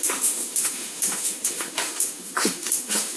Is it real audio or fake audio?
fake